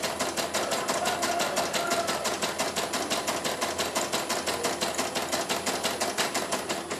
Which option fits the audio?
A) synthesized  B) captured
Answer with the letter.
B